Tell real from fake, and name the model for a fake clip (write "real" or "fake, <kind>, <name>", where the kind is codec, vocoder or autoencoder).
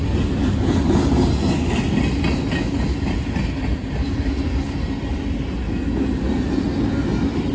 real